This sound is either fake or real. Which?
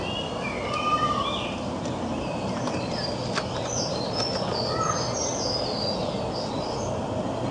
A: real